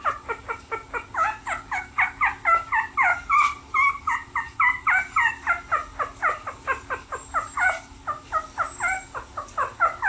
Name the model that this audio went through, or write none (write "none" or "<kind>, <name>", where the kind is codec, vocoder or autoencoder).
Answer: none